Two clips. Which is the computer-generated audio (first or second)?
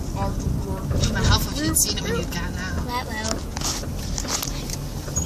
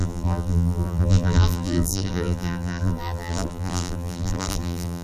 second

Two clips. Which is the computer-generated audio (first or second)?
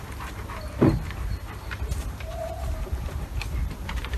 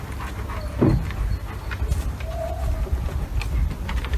first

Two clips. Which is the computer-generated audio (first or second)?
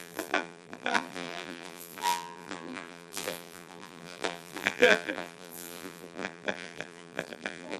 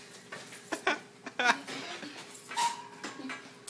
first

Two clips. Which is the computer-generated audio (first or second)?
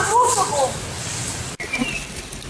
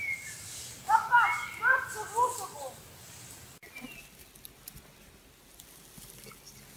first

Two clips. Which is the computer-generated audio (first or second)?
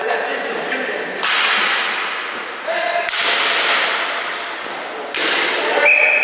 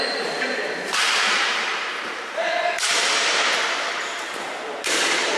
second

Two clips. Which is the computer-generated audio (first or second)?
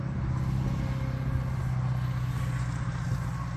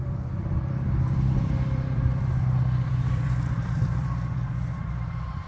second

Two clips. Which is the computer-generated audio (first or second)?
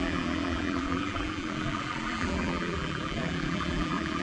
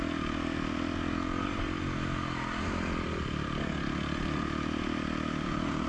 first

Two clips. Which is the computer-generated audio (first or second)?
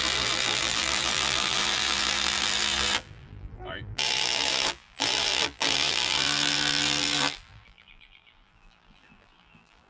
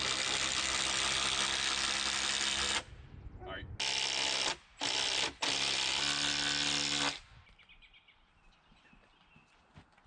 first